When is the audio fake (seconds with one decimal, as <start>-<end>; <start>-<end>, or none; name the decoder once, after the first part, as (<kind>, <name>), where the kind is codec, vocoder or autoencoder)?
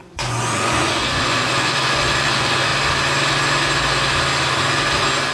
0.0-2.7 (vocoder, Vocos)